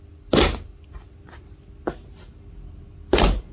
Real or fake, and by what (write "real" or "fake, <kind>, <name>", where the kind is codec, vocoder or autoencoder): real